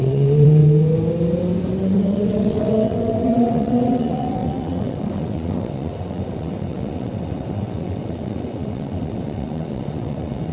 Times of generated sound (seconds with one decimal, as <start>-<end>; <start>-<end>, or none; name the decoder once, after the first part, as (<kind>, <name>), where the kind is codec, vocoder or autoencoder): 0.0-0.6 (vocoder, WaveNeXt); 1.8-10.5